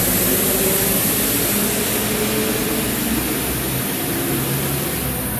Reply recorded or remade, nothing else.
recorded